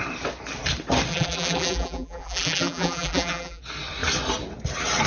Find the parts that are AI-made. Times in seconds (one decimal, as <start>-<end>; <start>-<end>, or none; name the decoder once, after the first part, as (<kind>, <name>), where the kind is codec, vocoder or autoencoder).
1.1-3.6 (vocoder, BigVGAN v2)